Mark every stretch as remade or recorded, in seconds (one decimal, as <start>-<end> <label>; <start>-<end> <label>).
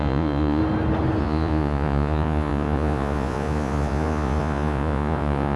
0.0-0.6 remade; 0.6-1.2 recorded; 1.2-5.6 remade